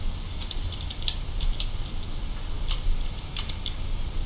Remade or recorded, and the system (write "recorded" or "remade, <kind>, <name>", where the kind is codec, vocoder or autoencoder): recorded